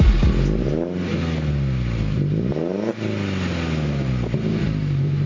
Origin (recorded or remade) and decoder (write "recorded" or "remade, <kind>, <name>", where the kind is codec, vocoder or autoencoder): recorded